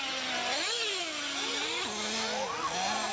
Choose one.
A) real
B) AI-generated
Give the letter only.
A